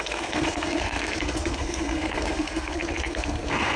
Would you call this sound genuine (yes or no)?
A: no